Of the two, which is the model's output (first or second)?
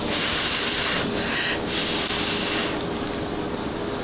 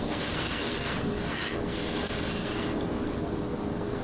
second